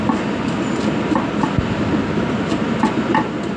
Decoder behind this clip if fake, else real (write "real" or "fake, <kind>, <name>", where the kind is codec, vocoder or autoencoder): real